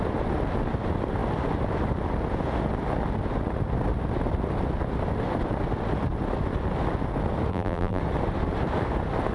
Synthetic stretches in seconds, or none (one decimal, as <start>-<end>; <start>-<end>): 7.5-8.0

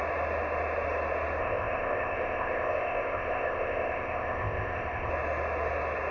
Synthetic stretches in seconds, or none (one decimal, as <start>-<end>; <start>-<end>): 1.4-5.1

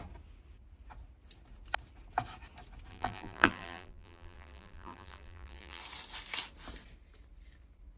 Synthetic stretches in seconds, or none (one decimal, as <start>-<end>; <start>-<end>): 2.9-5.8